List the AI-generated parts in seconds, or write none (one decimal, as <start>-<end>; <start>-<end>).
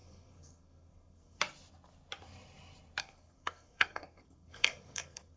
0.0-1.4; 3.0-5.4